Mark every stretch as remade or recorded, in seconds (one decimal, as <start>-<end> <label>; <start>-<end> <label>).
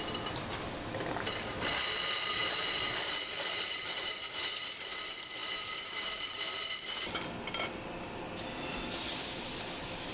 0.0-2.4 recorded; 2.4-4.1 remade; 4.1-10.1 recorded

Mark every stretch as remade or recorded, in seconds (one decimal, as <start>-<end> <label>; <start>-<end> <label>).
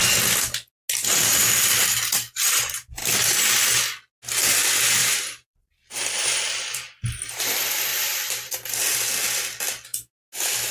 0.0-5.0 recorded; 5.0-7.4 remade; 7.4-7.9 recorded; 7.9-8.5 remade; 8.5-10.7 recorded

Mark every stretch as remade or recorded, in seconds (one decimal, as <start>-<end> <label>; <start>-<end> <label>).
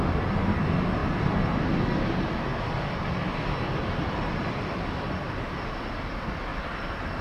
0.0-2.5 recorded; 2.5-5.2 remade; 5.2-7.2 recorded